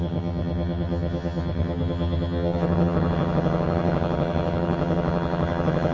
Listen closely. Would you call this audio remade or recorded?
remade